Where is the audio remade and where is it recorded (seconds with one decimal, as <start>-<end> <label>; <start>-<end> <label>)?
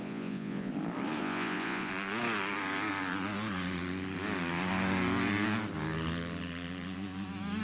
0.0-0.7 remade; 0.7-1.2 recorded; 1.2-1.9 remade; 1.9-7.6 recorded